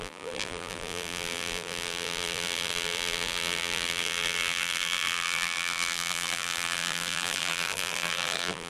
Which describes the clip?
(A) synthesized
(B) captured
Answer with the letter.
A